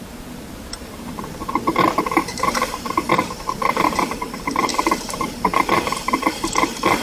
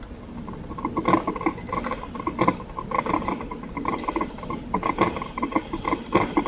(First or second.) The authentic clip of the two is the second